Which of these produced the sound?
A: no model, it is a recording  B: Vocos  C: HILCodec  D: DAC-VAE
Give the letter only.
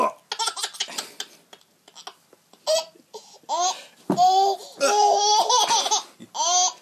A